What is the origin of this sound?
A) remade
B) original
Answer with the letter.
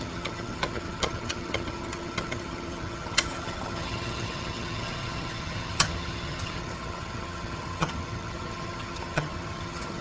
A